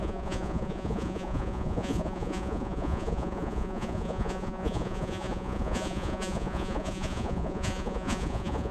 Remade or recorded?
remade